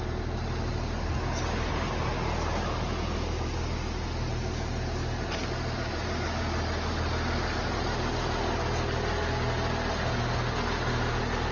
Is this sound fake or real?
real